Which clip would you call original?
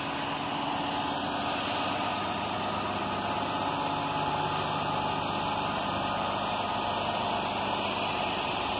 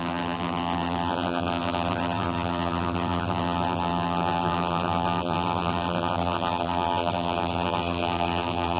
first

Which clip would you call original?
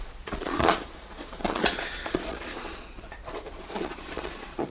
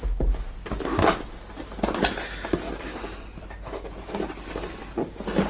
second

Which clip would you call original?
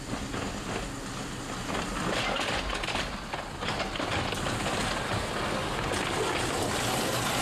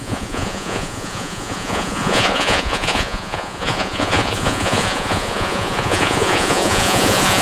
first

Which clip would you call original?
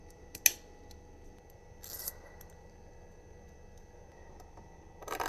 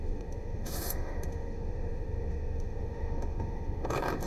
first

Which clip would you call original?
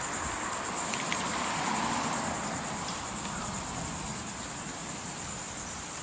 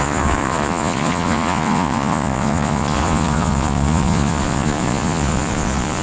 first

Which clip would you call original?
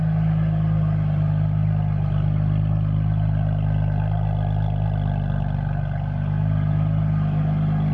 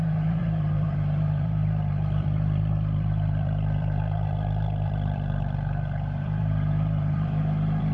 first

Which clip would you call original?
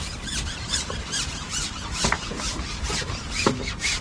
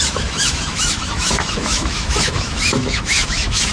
first